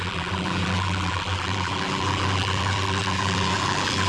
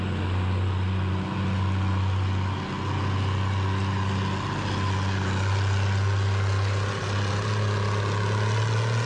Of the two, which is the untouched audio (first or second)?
second